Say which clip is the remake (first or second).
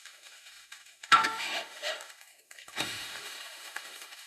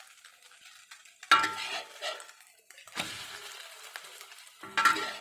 first